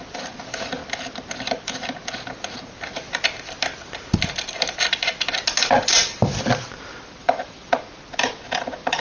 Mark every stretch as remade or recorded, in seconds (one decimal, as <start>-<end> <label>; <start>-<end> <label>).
0.0-7.2 recorded; 7.2-7.7 remade; 7.7-9.0 recorded